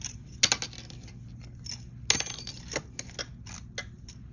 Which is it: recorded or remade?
recorded